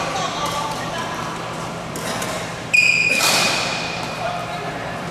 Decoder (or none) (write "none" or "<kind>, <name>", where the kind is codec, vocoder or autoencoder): vocoder, BigVGAN v2